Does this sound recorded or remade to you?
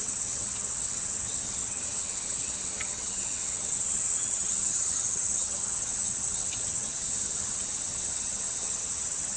remade